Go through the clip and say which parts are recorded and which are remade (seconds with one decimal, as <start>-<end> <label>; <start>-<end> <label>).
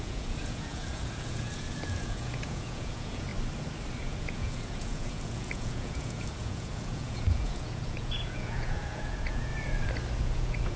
0.0-3.3 remade; 3.3-4.0 recorded; 4.0-9.5 remade; 9.5-10.2 recorded; 10.2-10.8 remade